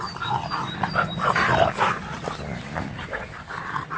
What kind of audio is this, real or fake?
real